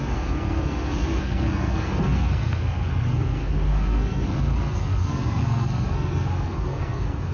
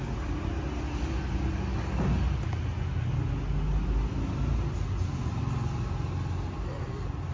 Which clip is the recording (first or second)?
second